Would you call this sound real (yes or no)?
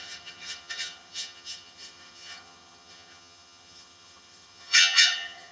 no